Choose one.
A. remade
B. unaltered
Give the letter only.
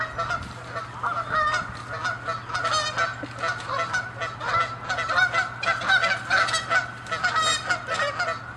B